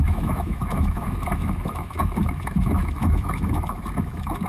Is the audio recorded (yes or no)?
no